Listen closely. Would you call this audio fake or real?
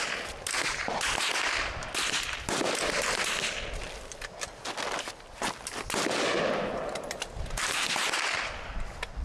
real